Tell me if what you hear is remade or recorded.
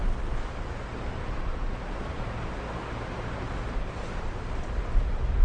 recorded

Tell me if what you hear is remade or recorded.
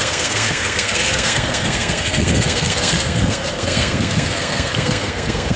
remade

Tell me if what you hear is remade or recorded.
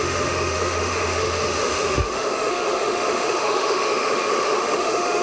remade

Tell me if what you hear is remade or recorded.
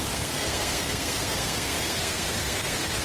remade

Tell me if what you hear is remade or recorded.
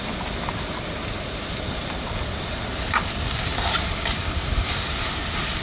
remade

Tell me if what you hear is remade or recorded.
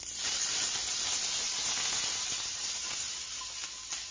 recorded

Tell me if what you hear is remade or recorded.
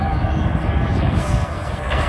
remade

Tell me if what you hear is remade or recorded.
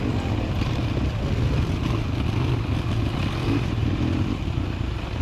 recorded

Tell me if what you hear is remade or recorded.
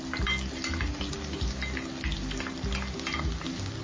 recorded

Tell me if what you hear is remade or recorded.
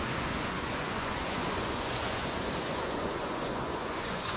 remade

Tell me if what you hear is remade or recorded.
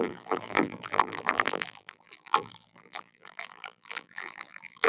remade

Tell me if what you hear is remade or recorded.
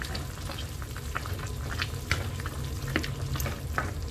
recorded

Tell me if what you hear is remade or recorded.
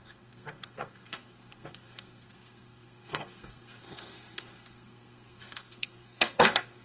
remade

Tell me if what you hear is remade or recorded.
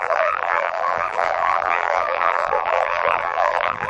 remade